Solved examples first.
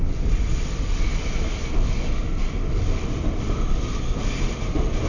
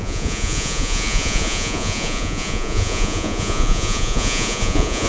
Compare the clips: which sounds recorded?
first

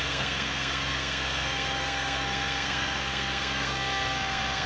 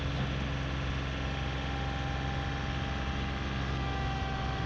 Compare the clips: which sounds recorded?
second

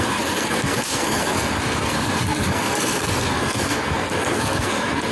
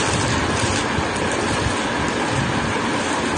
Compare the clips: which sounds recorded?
second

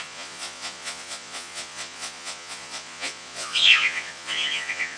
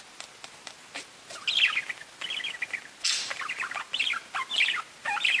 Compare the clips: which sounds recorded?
second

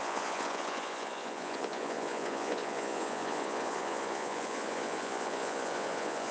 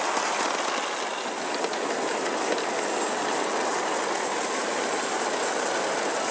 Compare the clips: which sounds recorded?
second